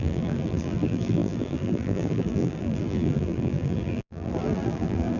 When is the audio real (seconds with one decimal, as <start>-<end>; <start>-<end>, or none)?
none

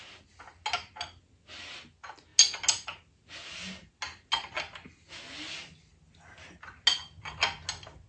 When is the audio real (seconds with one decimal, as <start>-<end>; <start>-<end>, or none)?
0.0-8.1

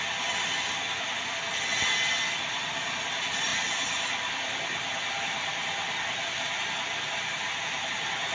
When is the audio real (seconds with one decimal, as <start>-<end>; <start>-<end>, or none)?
0.0-3.5; 7.9-8.3

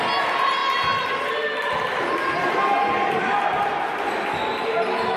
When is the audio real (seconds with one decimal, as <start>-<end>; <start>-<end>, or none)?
0.0-5.2

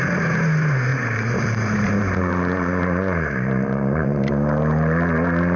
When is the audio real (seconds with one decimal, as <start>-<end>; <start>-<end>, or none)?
0.0-0.9; 4.3-5.6

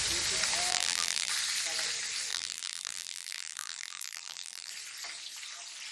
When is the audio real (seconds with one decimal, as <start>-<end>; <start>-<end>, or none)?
0.0-0.7; 1.3-2.3; 4.7-5.9

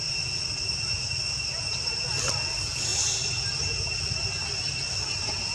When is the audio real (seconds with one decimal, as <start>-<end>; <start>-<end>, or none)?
0.0-5.5

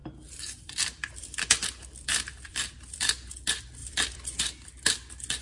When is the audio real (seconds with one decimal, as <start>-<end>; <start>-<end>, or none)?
3.0-3.8; 4.4-5.4